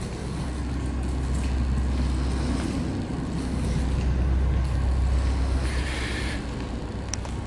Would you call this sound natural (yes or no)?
yes